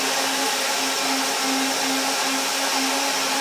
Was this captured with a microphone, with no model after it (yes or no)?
yes